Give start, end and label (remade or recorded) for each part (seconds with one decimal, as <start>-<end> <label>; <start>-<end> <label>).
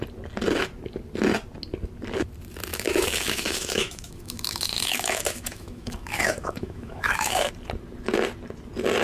0.0-2.7 recorded; 2.7-7.5 remade; 7.5-9.0 recorded